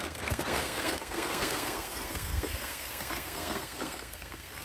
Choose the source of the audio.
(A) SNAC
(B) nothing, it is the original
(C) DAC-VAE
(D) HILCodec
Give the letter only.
A